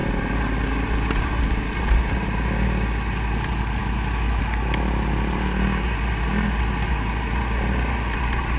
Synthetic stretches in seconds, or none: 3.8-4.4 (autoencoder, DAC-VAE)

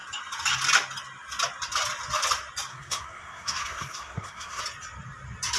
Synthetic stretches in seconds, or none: 2.7-4.6 (codec, SNAC)

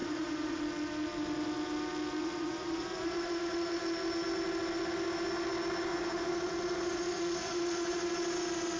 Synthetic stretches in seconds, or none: 0.0-0.6 (vocoder, Vocos); 2.2-3.8; 5.9-8.1

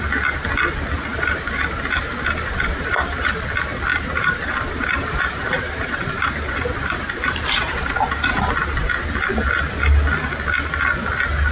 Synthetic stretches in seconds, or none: 1.1-3.3 (vocoder, BigVGAN v2); 3.9-8.4

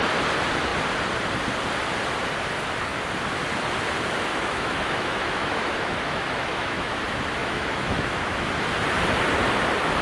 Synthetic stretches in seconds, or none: 4.3-7.0 (autoencoder, DAC-VAE); 7.4-8.5

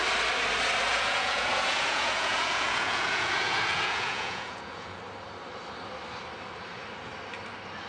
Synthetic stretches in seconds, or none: 0.9-5.0 (vocoder, Vocos)